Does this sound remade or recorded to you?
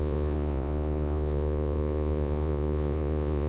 remade